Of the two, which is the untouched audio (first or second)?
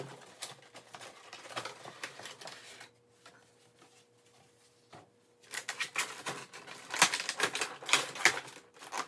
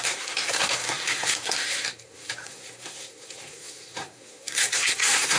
first